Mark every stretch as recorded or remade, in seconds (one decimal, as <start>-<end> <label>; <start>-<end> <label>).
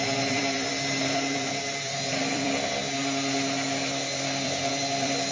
0.0-5.3 remade